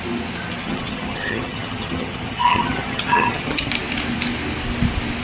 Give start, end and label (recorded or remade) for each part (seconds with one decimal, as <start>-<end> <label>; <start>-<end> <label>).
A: 0.0-0.6 recorded; 0.6-3.7 remade; 3.7-5.2 recorded